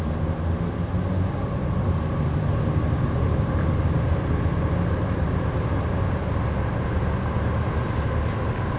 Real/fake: real